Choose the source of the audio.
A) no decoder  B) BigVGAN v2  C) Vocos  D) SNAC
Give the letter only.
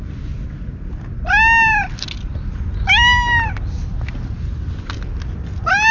A